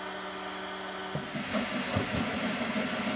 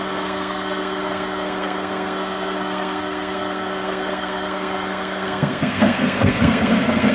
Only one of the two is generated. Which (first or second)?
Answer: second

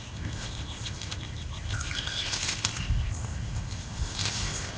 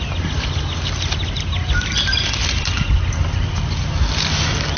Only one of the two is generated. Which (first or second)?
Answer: first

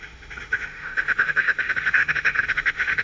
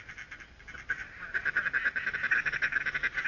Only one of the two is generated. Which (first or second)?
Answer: first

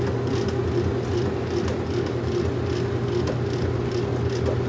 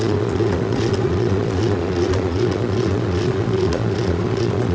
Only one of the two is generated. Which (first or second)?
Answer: second